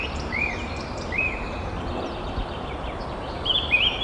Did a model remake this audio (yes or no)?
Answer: yes